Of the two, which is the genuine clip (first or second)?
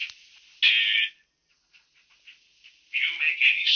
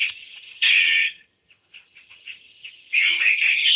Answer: first